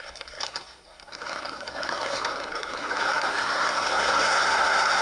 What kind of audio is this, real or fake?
fake